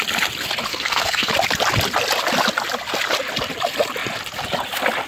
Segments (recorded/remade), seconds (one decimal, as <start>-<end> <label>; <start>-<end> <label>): 0.0-0.7 recorded; 0.7-1.3 remade; 1.3-5.1 recorded